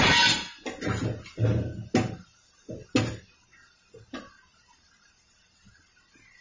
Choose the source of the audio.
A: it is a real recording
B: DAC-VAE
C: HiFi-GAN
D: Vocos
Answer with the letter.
A